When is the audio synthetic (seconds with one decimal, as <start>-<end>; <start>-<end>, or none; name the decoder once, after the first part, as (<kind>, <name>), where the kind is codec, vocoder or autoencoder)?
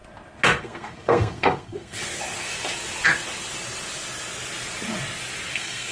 0.6-2.0 (codec, SNAC); 5.5-5.9